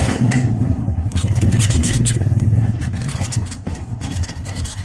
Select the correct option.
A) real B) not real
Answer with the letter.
B